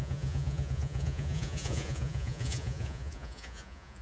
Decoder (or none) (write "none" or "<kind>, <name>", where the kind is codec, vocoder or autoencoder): vocoder, Vocos